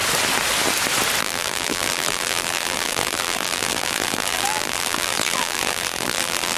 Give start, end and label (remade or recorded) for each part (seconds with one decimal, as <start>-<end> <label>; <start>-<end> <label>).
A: 0.0-1.2 recorded; 1.2-6.6 remade